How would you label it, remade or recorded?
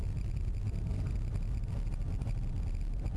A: recorded